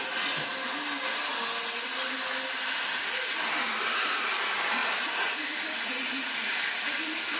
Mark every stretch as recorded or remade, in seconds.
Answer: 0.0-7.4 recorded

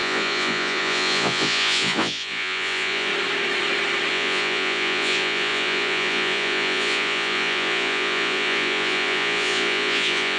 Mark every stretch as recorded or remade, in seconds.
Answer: 0.0-3.1 remade; 3.1-4.1 recorded; 4.1-10.4 remade